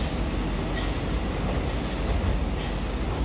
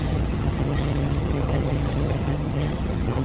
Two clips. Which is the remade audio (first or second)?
second